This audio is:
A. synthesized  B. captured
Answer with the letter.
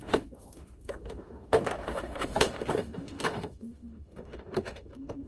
A